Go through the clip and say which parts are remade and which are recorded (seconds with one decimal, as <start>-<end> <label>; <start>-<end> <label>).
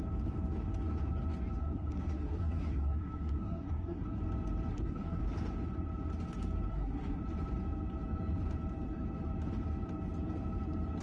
0.0-1.6 recorded; 1.6-4.2 remade; 4.2-4.7 recorded; 4.7-5.2 remade; 5.2-6.7 recorded; 6.7-7.2 remade; 7.2-11.0 recorded